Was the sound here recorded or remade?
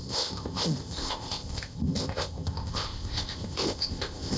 remade